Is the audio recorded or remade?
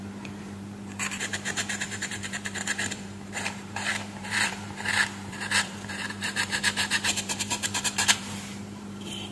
remade